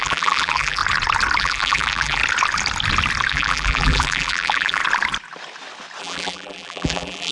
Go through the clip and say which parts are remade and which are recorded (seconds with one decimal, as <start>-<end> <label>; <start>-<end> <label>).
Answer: 0.0-0.8 remade; 0.8-1.4 recorded; 1.4-2.2 remade; 2.2-3.3 recorded; 3.3-4.8 remade; 4.8-6.0 recorded; 6.0-7.3 remade